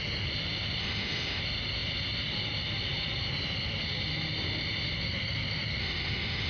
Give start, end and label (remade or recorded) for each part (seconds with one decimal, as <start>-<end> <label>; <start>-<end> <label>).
0.0-0.8 recorded; 0.8-1.4 remade; 1.4-5.8 recorded; 5.8-6.5 remade